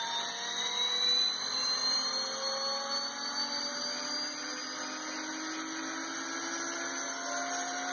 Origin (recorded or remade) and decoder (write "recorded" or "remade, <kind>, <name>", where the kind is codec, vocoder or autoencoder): recorded